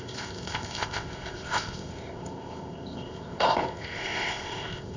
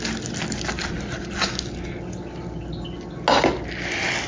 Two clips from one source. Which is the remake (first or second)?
first